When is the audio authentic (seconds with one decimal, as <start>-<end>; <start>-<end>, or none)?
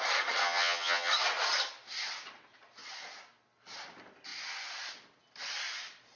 0.0-0.4; 1.1-6.2